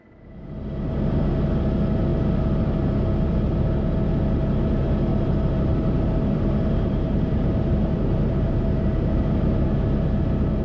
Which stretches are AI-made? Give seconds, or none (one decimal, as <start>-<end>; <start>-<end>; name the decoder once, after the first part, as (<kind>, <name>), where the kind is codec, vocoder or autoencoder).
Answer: 5.1-9.5 (vocoder, BigVGAN v2)